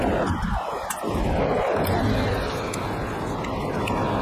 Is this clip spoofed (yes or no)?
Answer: no